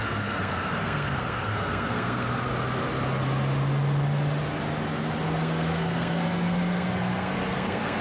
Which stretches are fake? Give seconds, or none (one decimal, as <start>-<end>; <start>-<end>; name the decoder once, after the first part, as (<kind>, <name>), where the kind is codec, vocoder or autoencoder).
0.0-2.5 (codec, SNAC); 5.2-8.0